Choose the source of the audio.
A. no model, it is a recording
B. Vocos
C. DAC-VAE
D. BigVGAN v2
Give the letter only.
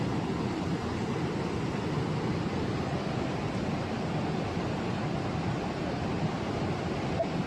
A